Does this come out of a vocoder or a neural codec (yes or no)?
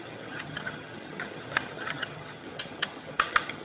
yes